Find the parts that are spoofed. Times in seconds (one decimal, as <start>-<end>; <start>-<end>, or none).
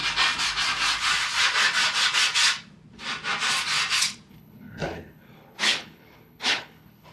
4.3-7.1